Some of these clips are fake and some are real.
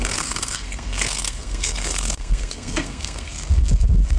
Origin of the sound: fake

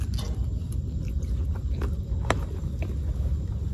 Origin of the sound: real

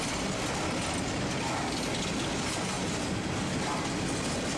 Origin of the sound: real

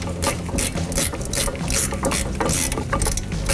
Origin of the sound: real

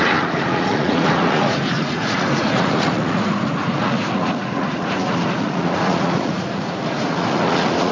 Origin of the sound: fake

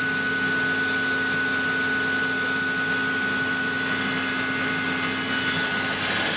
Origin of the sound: real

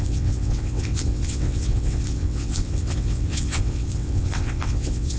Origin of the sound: fake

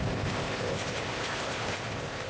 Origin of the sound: fake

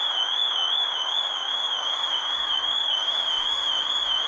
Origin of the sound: fake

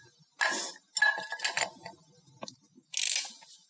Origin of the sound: real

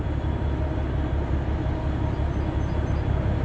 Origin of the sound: real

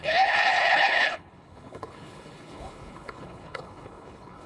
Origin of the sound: fake